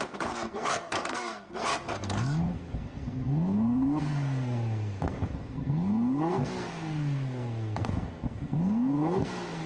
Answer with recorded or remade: remade